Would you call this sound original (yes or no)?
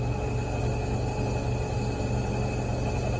yes